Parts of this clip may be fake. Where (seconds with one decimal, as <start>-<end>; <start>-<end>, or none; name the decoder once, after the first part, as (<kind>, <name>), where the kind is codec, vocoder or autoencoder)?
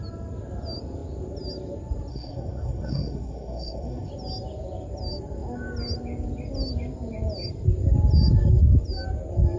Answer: 2.1-4.1 (codec, SNAC)